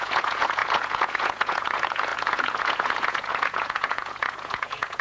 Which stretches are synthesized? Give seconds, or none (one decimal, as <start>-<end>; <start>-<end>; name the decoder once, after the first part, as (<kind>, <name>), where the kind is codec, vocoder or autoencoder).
0.0-5.0 (vocoder, Vocos)